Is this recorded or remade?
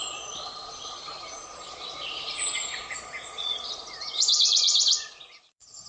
remade